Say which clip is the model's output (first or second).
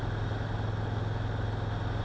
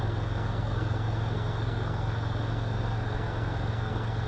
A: second